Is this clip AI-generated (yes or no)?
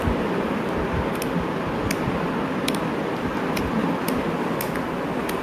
no